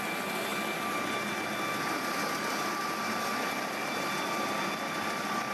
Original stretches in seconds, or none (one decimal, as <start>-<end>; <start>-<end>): 0.0-5.5